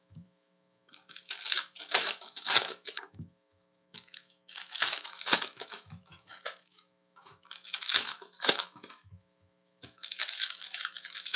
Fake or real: fake